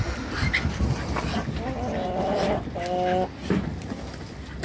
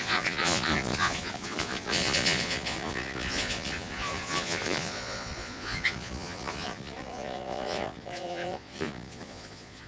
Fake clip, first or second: second